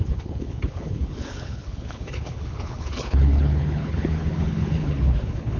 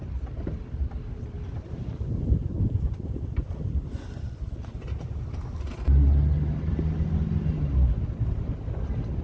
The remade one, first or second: first